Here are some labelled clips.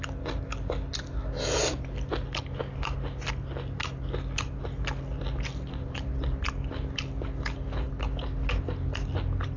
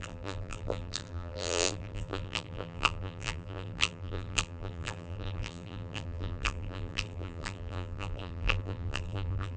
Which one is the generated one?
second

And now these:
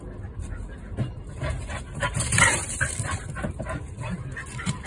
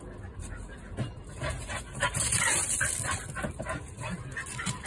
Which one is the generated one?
first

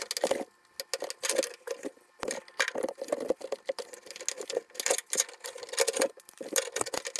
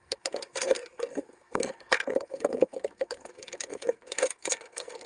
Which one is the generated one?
second